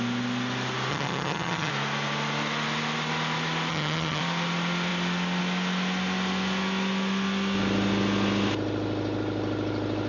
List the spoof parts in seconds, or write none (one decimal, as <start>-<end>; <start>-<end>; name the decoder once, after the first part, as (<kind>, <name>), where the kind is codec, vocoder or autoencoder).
0.9-1.7 (vocoder, HiFi-GAN); 3.7-4.2